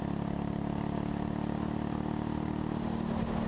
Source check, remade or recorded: recorded